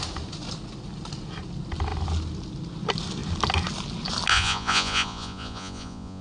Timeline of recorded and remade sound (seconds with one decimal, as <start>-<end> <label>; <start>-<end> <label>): 0.0-4.3 recorded; 4.3-6.2 remade

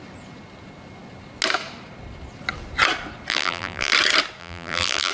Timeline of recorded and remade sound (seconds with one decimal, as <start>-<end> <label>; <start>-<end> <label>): 0.0-3.3 recorded; 3.3-3.9 remade; 3.9-4.4 recorded; 4.4-5.1 remade

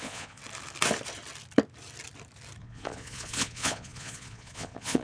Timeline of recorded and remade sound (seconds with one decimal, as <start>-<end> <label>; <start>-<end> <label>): 0.0-0.4 remade; 0.4-2.6 recorded; 2.6-5.0 remade

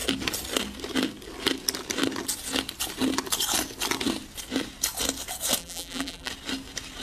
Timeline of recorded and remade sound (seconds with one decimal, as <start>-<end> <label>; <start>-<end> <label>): 0.0-5.6 recorded; 5.6-6.3 remade; 6.3-7.0 recorded

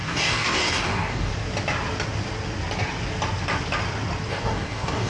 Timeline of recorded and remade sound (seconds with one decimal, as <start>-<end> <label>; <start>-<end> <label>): 0.0-1.3 remade; 1.3-4.3 recorded; 4.3-5.1 remade

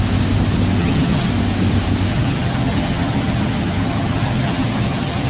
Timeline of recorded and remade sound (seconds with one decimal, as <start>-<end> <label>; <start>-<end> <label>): 0.0-0.8 recorded; 0.8-1.3 remade; 1.3-2.1 recorded; 2.1-5.3 remade